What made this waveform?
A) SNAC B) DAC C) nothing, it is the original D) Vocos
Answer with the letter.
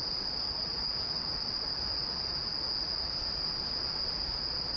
D